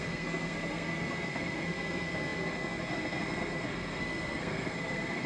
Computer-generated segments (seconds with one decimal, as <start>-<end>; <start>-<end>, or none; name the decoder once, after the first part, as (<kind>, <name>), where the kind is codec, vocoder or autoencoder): 0.0-5.3 (codec, SNAC)